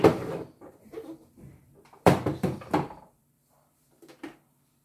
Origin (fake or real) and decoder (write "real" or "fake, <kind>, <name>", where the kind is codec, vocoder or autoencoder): fake, vocoder, BigVGAN v2